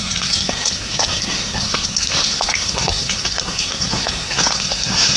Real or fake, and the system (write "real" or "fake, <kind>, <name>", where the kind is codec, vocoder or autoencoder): fake, codec, SNAC